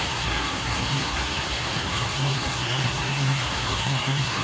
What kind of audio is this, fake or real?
fake